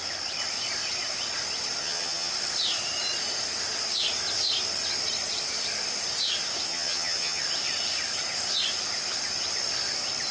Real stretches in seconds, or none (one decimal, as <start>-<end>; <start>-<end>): 0.0-1.8; 2.3-6.7; 7.4-10.3